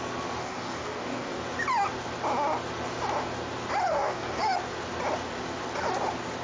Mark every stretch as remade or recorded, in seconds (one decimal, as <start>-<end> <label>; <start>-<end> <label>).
0.0-0.4 recorded; 0.4-1.4 remade; 1.4-3.9 recorded; 3.9-4.4 remade; 4.4-6.4 recorded